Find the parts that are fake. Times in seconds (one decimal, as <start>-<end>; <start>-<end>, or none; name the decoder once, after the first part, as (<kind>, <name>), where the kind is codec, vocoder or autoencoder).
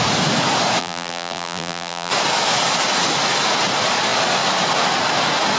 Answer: 0.8-2.1 (vocoder, BigVGAN v2)